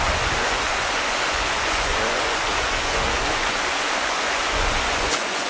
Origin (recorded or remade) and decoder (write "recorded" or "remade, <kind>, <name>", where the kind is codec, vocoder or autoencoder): remade, vocoder, Vocos